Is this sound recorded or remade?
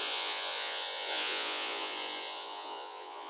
remade